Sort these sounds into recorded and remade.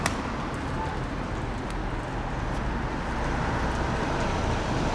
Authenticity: recorded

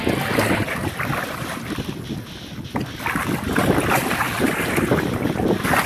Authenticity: recorded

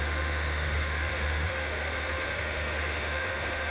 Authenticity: remade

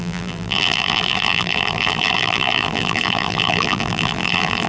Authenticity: remade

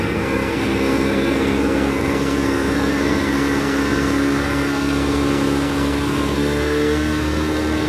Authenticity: remade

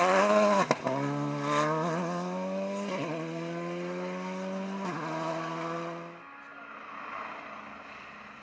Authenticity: recorded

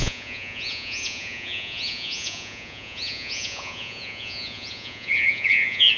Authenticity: remade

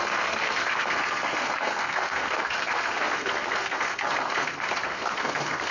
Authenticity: remade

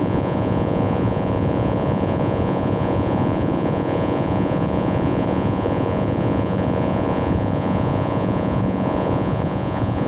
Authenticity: remade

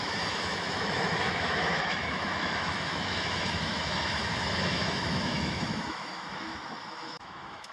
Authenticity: remade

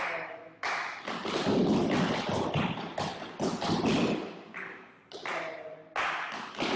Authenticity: recorded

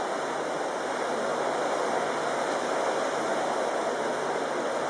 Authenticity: recorded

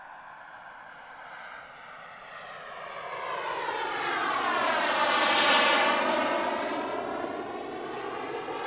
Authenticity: recorded